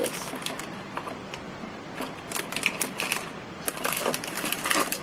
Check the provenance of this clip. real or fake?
real